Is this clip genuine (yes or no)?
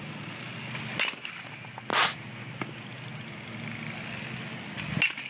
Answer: yes